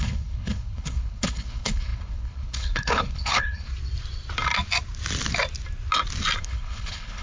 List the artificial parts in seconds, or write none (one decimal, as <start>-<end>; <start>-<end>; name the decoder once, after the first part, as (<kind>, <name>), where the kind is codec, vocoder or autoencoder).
0.0-3.7 (codec, HILCodec); 6.4-7.2